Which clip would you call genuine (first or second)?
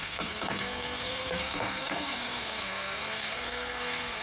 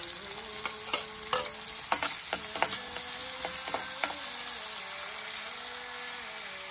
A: second